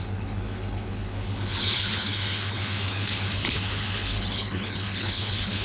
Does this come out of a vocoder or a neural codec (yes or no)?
yes